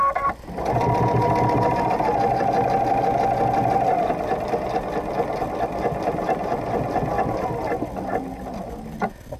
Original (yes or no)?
yes